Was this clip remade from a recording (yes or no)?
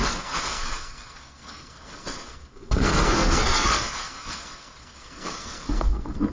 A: yes